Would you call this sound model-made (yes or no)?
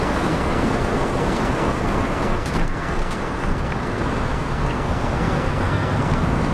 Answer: yes